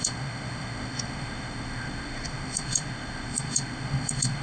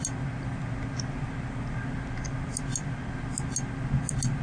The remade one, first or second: first